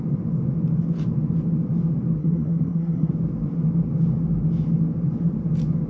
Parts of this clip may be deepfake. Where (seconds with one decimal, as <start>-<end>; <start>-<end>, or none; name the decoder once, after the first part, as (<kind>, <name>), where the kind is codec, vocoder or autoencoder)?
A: 2.2-3.1 (codec, SNAC)